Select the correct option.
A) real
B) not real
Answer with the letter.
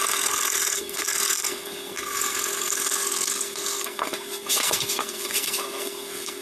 B